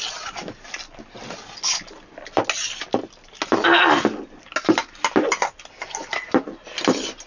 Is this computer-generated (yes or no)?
no